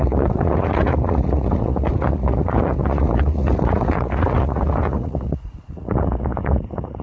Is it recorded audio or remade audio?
remade